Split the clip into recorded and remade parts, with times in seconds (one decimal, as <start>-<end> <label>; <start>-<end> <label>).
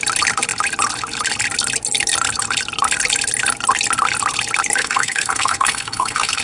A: 0.0-4.8 recorded; 4.8-6.4 remade